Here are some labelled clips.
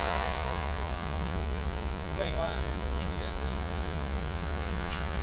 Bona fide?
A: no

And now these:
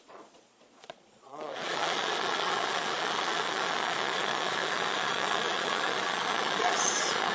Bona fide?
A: no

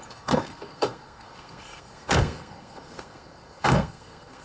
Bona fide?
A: no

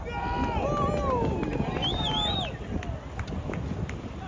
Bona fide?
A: yes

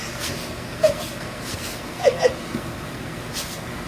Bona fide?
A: no